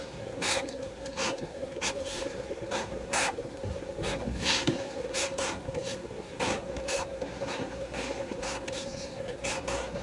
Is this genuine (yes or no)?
no